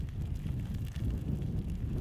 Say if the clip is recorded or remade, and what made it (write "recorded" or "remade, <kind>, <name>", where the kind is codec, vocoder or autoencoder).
recorded